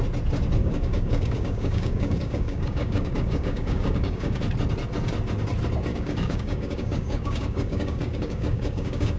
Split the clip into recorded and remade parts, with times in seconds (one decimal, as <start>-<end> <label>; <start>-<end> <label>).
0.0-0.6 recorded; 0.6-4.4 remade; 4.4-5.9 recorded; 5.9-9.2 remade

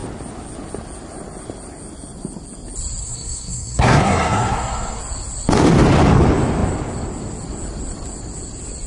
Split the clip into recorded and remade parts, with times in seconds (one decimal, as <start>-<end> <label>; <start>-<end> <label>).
0.0-3.0 recorded; 3.0-5.0 remade; 5.0-8.9 recorded

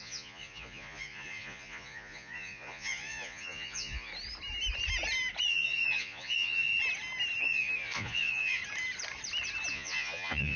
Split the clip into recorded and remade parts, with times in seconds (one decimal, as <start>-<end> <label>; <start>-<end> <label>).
0.0-4.1 remade; 4.1-5.5 recorded; 5.5-6.7 remade; 6.7-7.4 recorded; 7.4-8.6 remade; 8.6-9.7 recorded; 9.7-10.6 remade

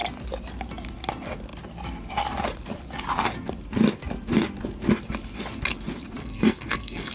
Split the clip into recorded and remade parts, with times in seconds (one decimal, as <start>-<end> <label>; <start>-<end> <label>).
0.0-6.2 recorded; 6.2-7.1 remade